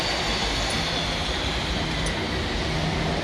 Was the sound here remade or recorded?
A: recorded